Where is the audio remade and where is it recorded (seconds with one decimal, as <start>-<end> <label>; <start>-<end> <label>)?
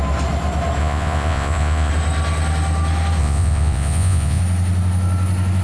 0.0-0.8 recorded; 0.8-1.9 remade; 1.9-3.2 recorded; 3.2-4.4 remade; 4.4-5.6 recorded